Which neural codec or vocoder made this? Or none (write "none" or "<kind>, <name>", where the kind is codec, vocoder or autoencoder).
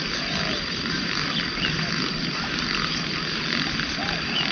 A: none